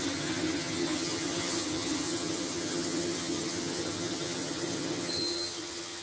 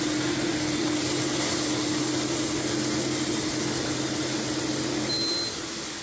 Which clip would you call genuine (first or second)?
second